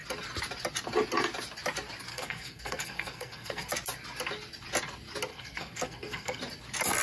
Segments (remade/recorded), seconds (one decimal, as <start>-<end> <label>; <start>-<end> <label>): 0.0-2.1 recorded; 2.1-3.7 remade; 3.7-5.3 recorded; 5.3-6.4 remade; 6.4-7.0 recorded